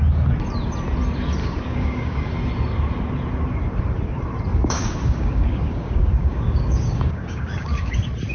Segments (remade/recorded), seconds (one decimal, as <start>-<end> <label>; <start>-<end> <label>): 0.0-1.4 recorded; 1.4-2.3 remade; 2.3-4.5 recorded; 4.5-7.9 remade; 7.9-8.3 recorded